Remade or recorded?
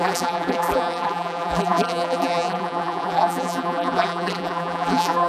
remade